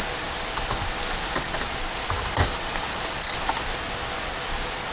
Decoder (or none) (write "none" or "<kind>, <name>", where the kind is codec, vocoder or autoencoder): none